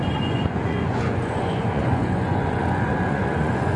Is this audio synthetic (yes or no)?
yes